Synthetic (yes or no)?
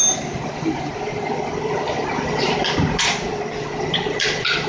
yes